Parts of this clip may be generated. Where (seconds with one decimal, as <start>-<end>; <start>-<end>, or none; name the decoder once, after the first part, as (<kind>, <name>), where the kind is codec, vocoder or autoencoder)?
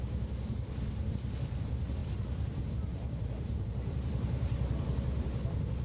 2.0-5.8 (vocoder, BigVGAN v2)